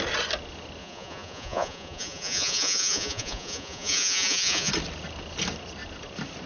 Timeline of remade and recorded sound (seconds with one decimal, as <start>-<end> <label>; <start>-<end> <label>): 0.0-0.8 recorded; 0.8-4.7 remade; 4.7-6.5 recorded

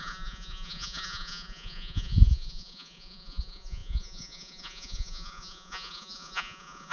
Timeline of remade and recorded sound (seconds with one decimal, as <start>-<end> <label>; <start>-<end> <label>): 0.0-6.9 remade

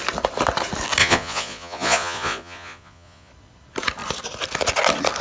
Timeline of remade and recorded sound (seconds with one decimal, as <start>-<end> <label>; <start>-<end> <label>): 0.0-1.0 recorded; 1.0-3.3 remade; 3.3-5.2 recorded

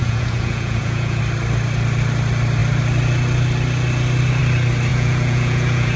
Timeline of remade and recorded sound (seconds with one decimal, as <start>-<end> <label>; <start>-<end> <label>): 0.0-1.2 remade; 1.2-4.9 recorded; 4.9-6.0 remade

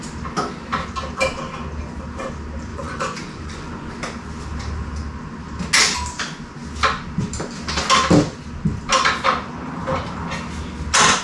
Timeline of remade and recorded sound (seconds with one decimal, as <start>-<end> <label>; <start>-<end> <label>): 0.0-2.7 recorded; 2.7-3.9 remade; 3.9-11.2 recorded